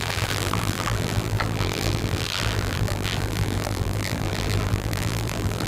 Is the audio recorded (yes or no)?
no